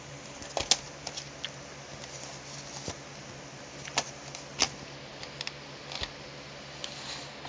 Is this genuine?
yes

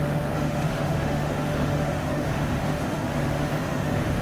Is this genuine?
no